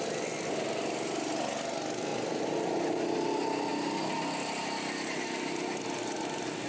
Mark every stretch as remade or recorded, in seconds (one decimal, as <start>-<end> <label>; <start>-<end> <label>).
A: 0.0-6.7 recorded